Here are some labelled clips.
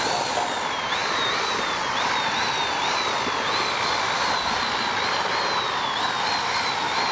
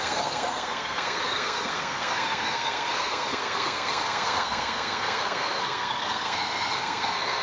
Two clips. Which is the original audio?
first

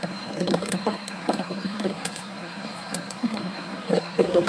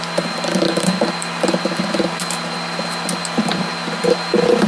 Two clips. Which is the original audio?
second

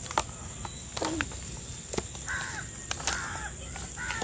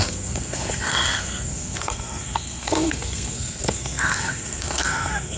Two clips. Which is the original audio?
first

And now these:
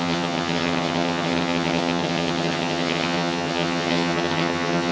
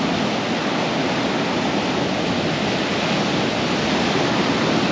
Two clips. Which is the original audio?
second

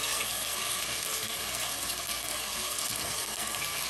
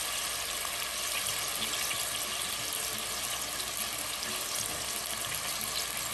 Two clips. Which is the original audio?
second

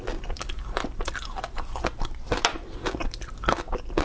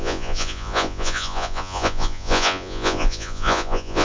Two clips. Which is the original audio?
first